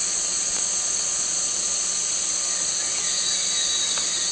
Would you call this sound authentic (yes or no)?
no